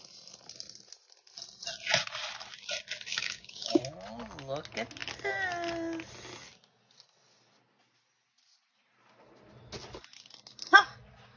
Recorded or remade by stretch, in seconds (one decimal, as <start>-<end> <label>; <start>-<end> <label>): 0.0-3.1 recorded; 3.1-3.8 remade; 3.8-11.4 recorded